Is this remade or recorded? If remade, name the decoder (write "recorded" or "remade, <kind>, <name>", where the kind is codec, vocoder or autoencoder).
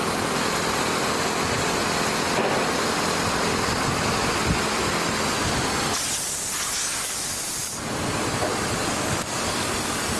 recorded